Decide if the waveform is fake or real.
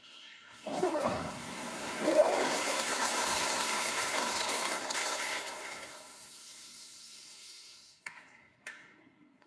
fake